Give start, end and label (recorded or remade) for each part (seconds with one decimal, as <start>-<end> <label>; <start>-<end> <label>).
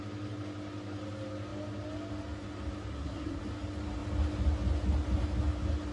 0.0-2.9 recorded; 2.9-3.4 remade; 3.4-5.9 recorded